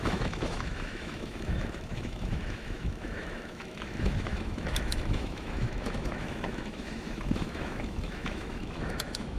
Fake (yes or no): yes